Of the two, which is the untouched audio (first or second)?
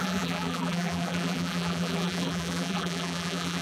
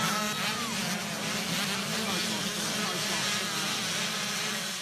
second